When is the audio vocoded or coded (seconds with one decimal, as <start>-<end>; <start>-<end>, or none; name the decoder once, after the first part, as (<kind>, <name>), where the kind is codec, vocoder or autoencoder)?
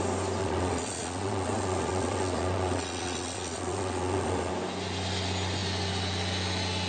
0.4-4.5 (vocoder, Vocos)